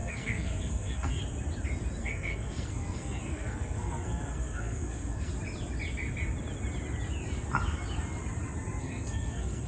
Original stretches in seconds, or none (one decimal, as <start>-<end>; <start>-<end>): 1.2-2.0; 5.3-8.8